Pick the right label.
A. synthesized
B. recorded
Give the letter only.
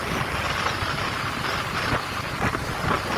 B